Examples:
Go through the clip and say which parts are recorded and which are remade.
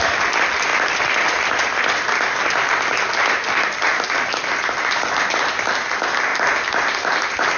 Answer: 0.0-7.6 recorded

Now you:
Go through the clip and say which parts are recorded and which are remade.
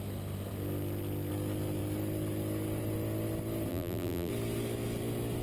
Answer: 0.0-3.7 recorded; 3.7-4.3 remade; 4.3-5.4 recorded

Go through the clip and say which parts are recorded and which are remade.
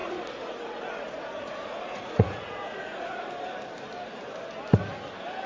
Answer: 0.0-3.3 remade; 3.3-5.5 recorded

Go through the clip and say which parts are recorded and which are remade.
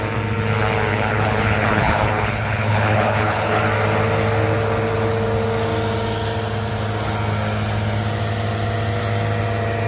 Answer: 0.0-0.9 recorded; 0.9-3.6 remade; 3.6-9.9 recorded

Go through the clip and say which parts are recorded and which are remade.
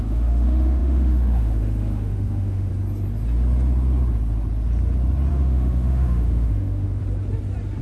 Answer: 0.0-2.7 remade; 2.7-5.3 recorded; 5.3-7.0 remade; 7.0-7.8 recorded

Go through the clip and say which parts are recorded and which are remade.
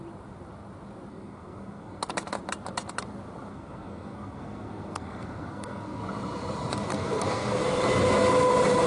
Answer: 0.0-1.1 recorded; 1.1-2.0 remade; 2.0-3.5 recorded; 3.5-6.0 remade; 6.0-6.9 recorded; 6.9-7.6 remade; 7.6-8.9 recorded